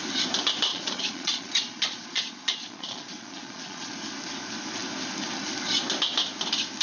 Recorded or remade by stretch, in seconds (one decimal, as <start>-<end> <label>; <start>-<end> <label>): 0.0-0.7 recorded; 0.7-3.9 remade; 3.9-6.8 recorded